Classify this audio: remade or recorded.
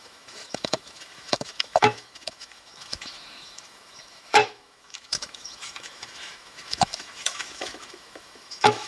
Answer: remade